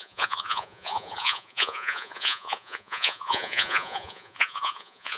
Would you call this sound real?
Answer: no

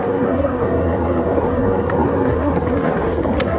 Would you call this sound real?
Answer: no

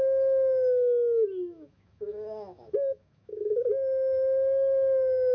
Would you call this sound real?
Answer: no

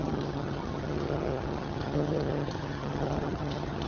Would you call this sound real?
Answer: no